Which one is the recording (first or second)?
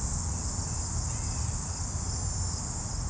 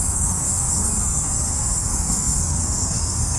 first